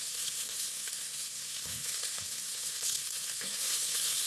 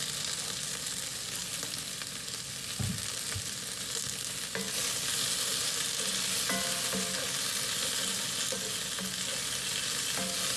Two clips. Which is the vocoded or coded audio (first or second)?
first